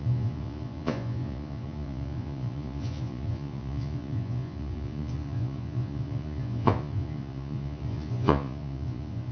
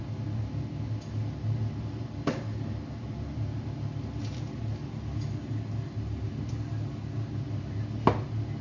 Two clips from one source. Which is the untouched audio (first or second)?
second